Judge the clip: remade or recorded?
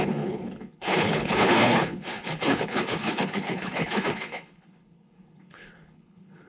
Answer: remade